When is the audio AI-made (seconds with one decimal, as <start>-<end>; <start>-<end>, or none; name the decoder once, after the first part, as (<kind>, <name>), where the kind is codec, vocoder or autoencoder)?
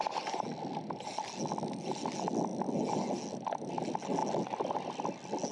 none